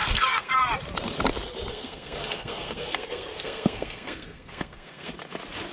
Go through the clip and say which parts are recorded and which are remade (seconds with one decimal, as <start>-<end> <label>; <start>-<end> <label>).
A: 0.0-0.5 remade; 0.5-1.7 recorded; 1.7-5.1 remade; 5.1-5.7 recorded